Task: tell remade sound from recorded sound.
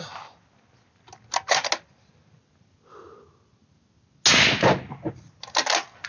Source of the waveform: recorded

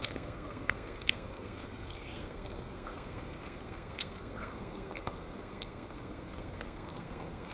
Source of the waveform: remade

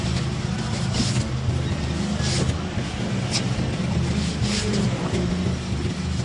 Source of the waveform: recorded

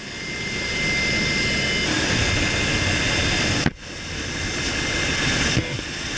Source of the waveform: recorded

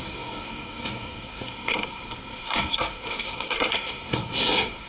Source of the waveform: remade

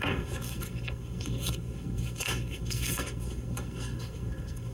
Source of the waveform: remade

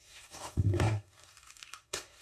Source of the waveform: remade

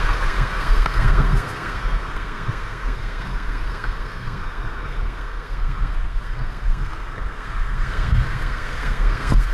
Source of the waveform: remade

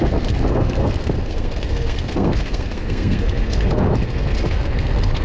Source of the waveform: remade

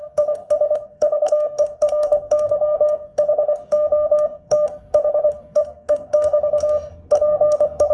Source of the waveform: remade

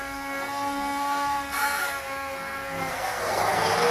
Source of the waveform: remade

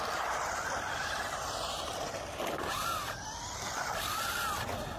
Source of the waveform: recorded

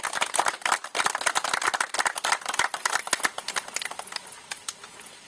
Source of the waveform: recorded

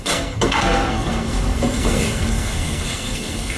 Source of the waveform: remade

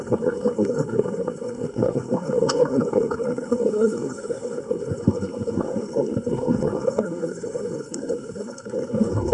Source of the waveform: remade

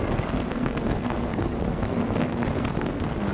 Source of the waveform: remade